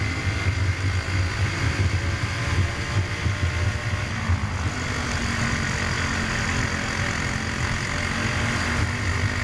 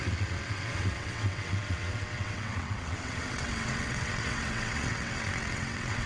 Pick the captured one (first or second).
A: first